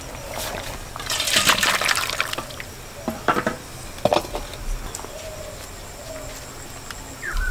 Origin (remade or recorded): recorded